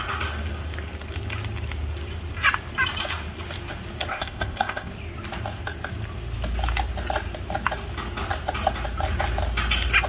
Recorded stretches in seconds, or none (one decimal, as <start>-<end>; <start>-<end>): 0.0-4.1; 4.9-10.1